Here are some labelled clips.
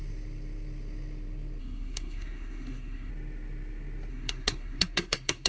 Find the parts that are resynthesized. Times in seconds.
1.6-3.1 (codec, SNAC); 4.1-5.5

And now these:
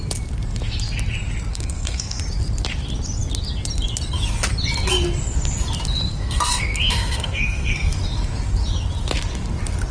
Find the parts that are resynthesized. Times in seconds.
1.5-2.2 (codec, SNAC); 6.2-7.9

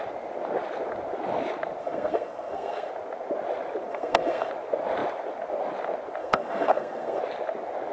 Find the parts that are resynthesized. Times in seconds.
1.8-2.9 (codec, SNAC); 3.9-4.5; 6.2-7.2

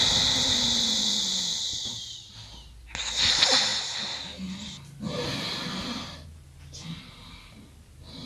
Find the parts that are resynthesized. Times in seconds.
none

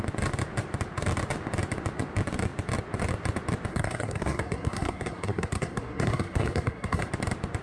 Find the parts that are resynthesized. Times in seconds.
3.7-7.1 (codec, SNAC)

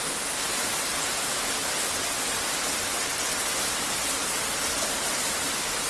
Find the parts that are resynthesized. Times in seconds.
none

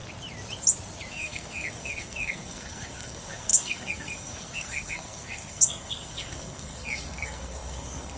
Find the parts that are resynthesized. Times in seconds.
1.1-8.2 (codec, SNAC)

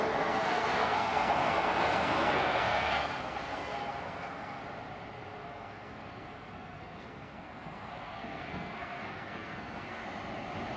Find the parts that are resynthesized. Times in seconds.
0.0-4.6 (codec, SNAC); 5.4-10.0